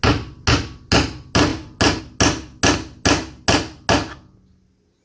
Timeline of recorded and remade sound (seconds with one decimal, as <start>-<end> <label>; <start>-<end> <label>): 0.0-5.0 recorded